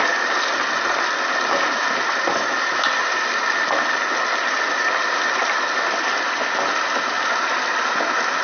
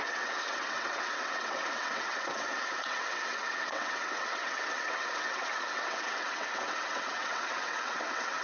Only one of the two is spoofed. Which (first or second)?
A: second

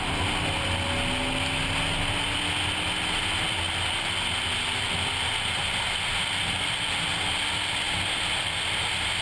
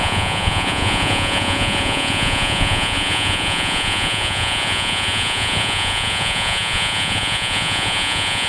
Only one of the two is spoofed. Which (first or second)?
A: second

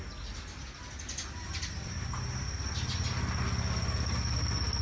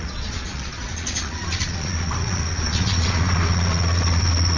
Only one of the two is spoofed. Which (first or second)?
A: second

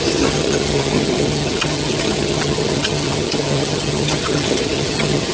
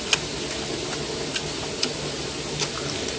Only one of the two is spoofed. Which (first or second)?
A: first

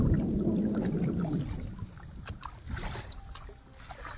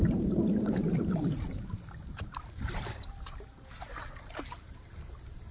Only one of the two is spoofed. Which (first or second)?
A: second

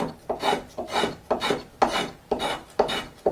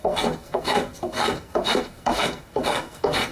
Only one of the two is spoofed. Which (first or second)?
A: second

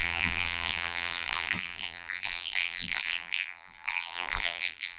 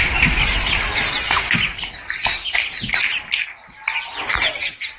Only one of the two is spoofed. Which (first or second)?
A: first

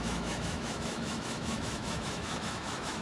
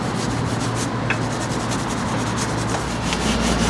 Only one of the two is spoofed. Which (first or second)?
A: first